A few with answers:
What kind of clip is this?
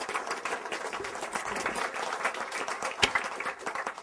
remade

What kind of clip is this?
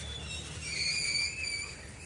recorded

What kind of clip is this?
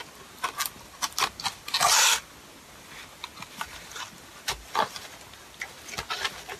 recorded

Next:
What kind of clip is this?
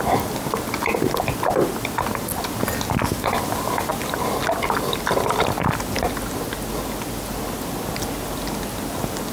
recorded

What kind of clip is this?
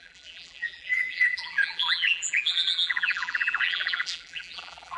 remade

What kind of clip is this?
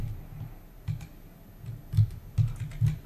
recorded